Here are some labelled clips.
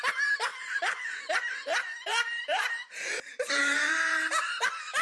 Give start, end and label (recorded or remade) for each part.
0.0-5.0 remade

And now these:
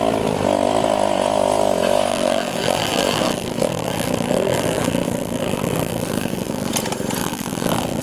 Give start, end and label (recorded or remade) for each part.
0.0-2.1 recorded; 2.1-6.7 remade; 6.7-7.2 recorded; 7.2-8.0 remade

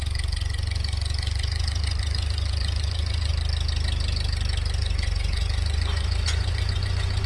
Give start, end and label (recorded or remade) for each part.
0.0-3.3 remade; 3.3-4.8 recorded; 4.8-7.3 remade

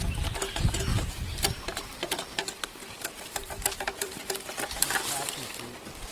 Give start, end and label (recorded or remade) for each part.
0.0-0.9 recorded; 0.9-4.6 remade; 4.6-6.1 recorded

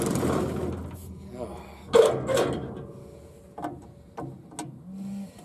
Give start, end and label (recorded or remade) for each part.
0.0-5.4 recorded

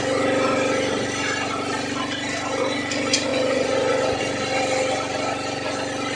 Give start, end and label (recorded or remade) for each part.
0.0-3.3 recorded; 3.3-4.2 remade; 4.2-6.2 recorded